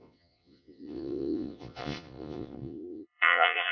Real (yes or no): no